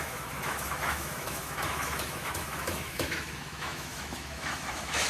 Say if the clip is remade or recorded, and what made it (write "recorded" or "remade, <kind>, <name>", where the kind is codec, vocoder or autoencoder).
remade, autoencoder, DAC-VAE